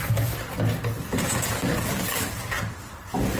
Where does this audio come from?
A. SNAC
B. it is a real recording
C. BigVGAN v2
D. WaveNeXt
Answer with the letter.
B